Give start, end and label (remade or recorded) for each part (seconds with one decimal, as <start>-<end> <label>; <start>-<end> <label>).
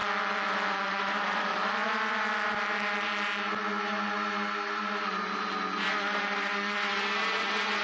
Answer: 0.0-0.7 recorded; 0.7-1.5 remade; 1.5-5.8 recorded; 5.8-7.8 remade